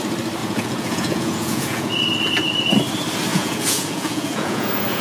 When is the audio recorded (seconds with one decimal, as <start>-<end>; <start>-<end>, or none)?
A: 0.0-0.4; 2.0-3.3